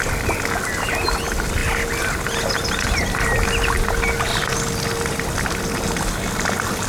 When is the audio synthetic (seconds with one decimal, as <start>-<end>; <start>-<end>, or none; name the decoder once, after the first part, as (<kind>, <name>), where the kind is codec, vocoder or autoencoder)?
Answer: none